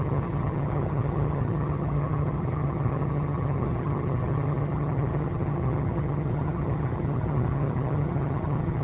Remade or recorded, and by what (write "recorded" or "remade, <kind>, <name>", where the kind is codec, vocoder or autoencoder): remade, vocoder, HiFi-GAN